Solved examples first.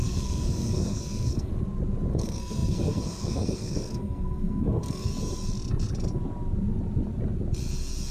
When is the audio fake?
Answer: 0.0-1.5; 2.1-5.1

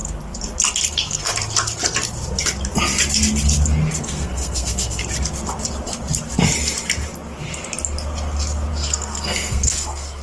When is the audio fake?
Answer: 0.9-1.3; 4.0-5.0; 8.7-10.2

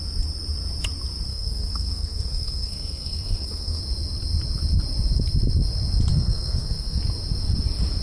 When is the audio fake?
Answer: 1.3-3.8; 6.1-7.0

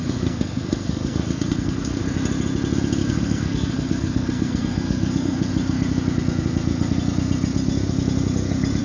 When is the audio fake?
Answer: 0.0-2.0; 3.1-5.5